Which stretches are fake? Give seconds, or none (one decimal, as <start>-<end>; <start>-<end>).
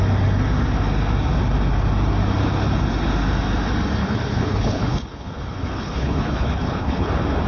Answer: 4.0-7.1